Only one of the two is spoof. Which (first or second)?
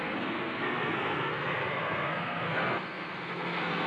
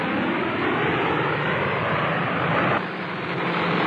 first